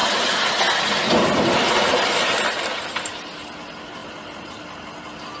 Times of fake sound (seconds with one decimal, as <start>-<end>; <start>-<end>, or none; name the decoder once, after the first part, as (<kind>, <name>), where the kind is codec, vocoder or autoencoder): 0.0-3.2 (vocoder, BigVGAN v2); 4.0-4.5